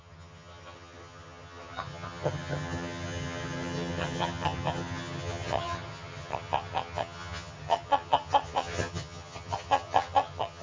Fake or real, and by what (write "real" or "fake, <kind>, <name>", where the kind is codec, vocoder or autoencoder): fake, vocoder, HiFi-GAN